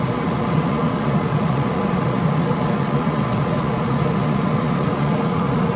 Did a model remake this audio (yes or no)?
yes